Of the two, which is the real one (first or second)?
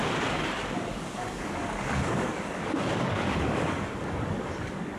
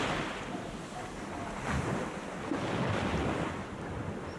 second